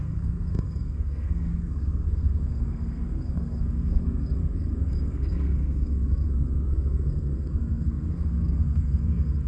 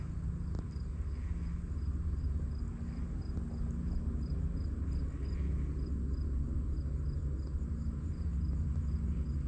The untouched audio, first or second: second